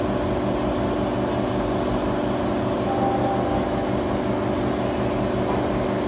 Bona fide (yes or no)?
yes